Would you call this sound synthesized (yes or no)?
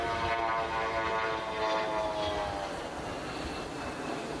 no